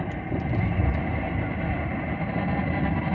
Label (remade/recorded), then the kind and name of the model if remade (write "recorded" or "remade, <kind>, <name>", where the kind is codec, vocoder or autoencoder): recorded